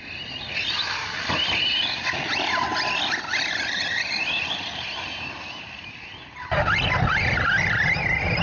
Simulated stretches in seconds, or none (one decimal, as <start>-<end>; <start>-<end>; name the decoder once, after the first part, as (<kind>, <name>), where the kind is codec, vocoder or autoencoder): none